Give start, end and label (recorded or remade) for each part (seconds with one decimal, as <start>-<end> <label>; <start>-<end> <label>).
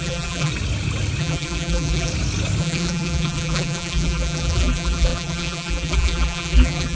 0.0-0.5 remade; 0.5-1.2 recorded; 1.2-2.1 remade; 2.1-2.6 recorded; 2.6-7.0 remade